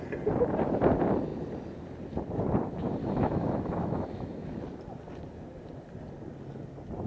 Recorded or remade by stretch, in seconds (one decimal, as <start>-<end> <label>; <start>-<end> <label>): 0.0-3.0 recorded; 3.0-4.6 remade; 4.6-7.1 recorded